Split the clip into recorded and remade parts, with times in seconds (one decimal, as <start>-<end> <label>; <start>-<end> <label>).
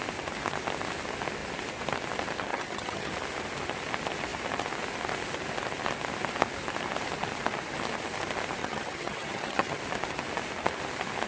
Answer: 0.0-2.5 recorded; 2.5-3.1 remade; 3.1-8.6 recorded; 8.6-9.8 remade; 9.8-11.3 recorded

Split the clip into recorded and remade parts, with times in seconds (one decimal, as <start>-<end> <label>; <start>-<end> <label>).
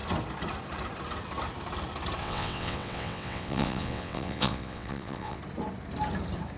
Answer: 0.0-2.2 recorded; 2.2-5.4 remade; 5.4-6.6 recorded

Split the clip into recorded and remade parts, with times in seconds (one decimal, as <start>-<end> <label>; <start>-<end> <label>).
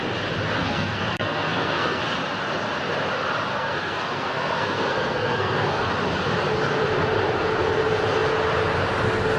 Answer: 0.0-0.6 recorded; 0.6-2.0 remade; 2.0-3.5 recorded; 3.5-5.9 remade; 5.9-9.4 recorded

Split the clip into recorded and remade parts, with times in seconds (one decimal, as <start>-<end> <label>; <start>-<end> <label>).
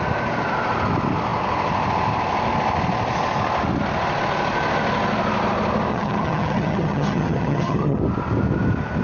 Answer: 0.0-5.9 recorded; 5.9-8.0 remade; 8.0-9.0 recorded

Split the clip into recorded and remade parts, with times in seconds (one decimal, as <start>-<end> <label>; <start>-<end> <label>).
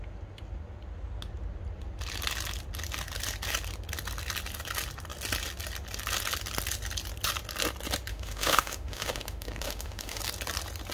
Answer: 0.0-8.1 recorded; 8.1-10.2 remade; 10.2-10.9 recorded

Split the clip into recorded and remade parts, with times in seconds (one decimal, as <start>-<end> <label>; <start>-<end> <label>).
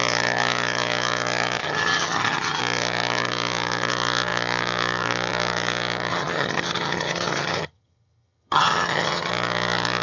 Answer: 0.0-1.6 recorded; 1.6-2.6 remade; 2.6-6.1 recorded; 6.1-9.3 remade; 9.3-10.0 recorded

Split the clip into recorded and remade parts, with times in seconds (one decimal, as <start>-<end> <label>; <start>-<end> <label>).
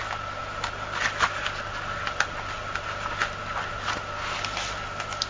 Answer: 0.0-5.3 recorded